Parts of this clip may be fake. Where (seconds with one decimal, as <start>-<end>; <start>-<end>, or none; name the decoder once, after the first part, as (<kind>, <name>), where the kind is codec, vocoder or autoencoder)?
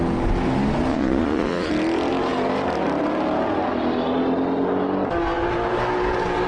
0.9-1.7 (vocoder, Vocos)